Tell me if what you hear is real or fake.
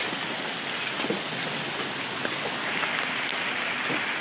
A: real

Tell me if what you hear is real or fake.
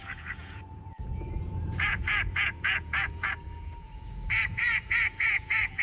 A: fake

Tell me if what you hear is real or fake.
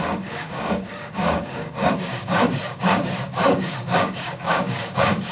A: fake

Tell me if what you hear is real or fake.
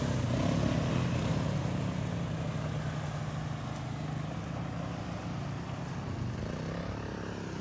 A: real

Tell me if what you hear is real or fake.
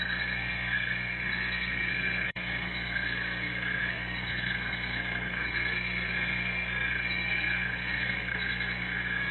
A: fake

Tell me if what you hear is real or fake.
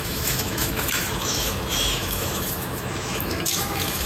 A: fake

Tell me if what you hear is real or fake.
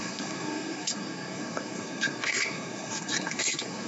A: fake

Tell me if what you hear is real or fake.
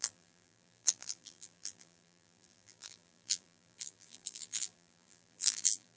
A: fake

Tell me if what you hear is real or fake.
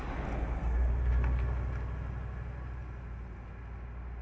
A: real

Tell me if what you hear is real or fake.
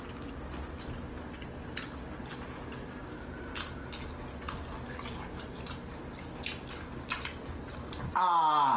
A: real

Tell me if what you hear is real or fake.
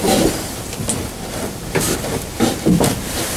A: fake